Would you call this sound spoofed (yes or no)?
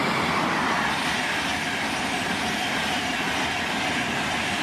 yes